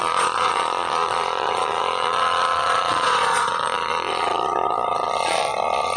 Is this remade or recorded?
remade